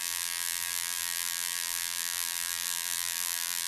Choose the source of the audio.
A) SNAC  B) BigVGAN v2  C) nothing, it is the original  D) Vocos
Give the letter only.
B